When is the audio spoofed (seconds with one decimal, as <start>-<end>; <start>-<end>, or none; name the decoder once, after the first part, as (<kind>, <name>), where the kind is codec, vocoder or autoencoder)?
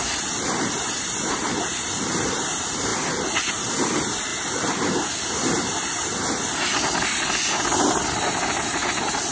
0.0-2.9 (vocoder, BigVGAN v2); 3.5-4.3; 5.2-6.1; 8.2-9.3